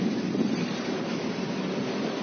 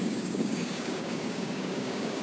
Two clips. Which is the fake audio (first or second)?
second